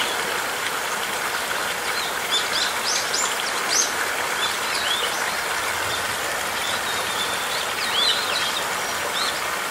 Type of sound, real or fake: real